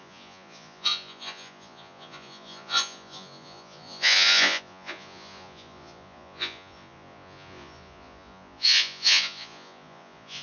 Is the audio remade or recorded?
remade